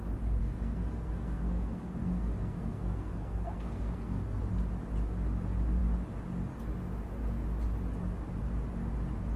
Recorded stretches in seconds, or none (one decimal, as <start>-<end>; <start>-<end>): 0.0-0.4; 4.4-9.4